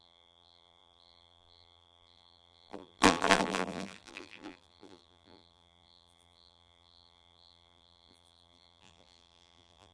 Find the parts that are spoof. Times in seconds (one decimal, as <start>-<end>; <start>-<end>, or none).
0.0-9.9